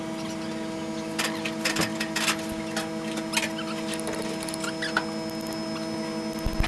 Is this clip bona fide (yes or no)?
yes